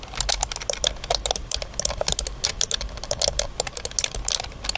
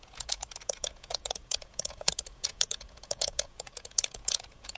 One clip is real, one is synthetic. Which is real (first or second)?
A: first